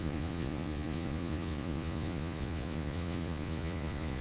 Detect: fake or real fake